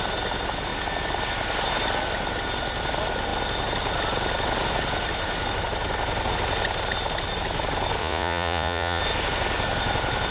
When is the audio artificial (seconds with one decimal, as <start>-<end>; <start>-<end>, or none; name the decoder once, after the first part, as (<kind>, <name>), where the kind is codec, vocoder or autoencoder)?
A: 8.0-9.0 (vocoder, Vocos)